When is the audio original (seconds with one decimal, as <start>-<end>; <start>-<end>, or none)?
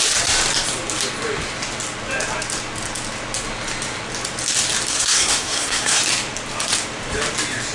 0.0-4.9; 6.0-7.7